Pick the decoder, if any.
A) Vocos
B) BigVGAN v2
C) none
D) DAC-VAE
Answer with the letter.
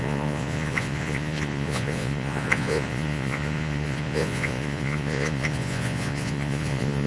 A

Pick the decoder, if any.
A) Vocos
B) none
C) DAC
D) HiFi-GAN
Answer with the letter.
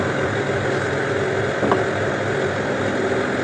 B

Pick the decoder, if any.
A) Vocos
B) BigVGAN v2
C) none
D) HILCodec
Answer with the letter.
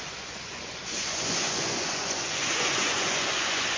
A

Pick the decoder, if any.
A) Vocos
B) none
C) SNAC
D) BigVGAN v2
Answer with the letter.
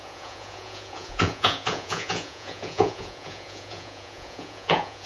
A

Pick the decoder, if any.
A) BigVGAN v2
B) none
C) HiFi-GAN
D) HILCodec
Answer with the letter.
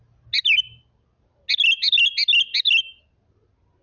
B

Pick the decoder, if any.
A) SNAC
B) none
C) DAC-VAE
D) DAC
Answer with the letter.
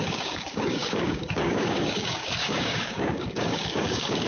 D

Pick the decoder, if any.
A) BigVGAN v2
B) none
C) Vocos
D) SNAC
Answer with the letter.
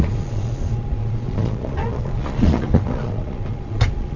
C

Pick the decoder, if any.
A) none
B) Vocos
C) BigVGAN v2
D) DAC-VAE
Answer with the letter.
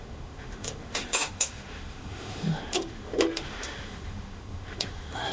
D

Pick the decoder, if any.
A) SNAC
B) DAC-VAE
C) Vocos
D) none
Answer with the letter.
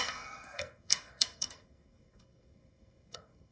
A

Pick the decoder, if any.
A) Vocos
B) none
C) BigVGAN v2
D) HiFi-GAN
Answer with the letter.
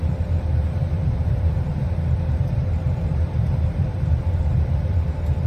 C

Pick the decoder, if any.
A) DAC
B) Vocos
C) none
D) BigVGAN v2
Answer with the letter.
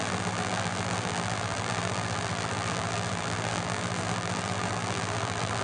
D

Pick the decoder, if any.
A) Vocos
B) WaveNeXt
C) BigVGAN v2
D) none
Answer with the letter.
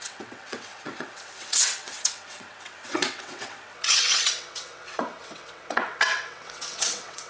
B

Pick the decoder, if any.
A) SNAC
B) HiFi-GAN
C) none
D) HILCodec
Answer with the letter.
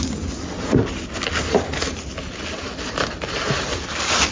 C